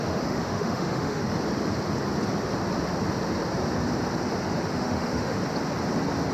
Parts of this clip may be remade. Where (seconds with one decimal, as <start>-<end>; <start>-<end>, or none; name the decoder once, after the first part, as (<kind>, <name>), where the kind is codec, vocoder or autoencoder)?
0.0-1.2 (autoencoder, DAC-VAE); 4.7-5.4